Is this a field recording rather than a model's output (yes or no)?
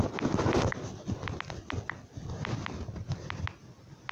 yes